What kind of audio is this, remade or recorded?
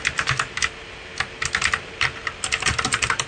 recorded